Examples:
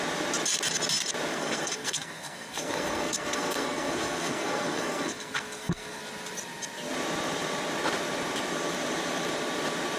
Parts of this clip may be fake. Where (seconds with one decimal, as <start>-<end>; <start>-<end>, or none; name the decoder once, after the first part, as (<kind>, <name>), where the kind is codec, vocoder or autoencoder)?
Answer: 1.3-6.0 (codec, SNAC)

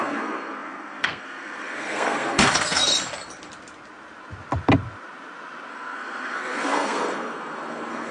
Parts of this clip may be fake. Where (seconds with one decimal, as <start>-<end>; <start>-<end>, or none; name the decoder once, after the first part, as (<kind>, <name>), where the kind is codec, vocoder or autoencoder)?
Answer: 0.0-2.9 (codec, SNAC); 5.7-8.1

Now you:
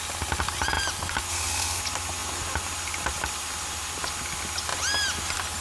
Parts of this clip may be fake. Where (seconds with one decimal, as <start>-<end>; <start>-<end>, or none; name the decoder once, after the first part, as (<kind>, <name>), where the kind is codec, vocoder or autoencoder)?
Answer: 1.3-1.8 (codec, SNAC)

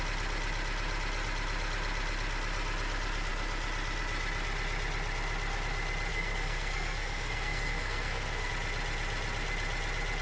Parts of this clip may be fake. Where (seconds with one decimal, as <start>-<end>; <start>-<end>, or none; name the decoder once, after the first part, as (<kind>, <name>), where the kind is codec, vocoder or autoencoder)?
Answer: 6.1-8.5 (codec, SNAC)

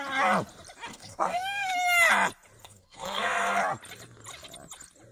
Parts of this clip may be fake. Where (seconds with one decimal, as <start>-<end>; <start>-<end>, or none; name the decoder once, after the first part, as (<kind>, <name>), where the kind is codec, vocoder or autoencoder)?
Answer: 0.9-1.7 (codec, SNAC); 2.6-3.6